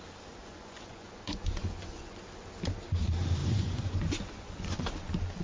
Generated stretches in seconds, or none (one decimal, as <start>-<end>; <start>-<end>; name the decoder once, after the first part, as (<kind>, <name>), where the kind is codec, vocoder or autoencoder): 0.4-2.2 (vocoder, Vocos); 3.4-4.8